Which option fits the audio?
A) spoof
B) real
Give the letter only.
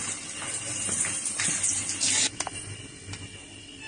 B